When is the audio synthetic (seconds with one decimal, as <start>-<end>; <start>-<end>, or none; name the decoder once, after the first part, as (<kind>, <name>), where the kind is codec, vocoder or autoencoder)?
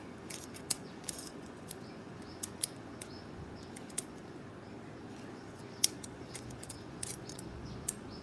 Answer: 0.0-4.5 (vocoder, Vocos); 5.1-8.2